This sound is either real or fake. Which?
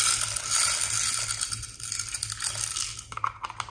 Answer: real